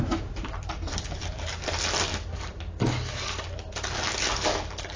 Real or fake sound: real